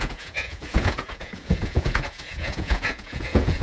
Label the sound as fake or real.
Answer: fake